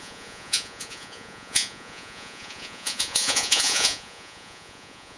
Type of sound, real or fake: fake